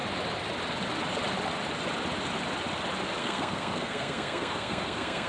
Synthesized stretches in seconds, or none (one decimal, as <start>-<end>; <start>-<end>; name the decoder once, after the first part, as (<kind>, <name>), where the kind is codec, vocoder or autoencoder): 3.2-5.3 (codec, SNAC)